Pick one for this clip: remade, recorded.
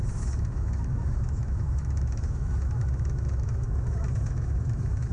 remade